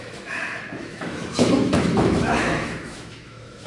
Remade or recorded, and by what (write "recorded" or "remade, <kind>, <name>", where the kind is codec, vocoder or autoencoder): remade, autoencoder, DAC-VAE